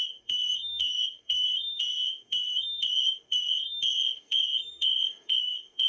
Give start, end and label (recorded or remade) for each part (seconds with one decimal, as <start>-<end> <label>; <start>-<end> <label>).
0.0-5.9 remade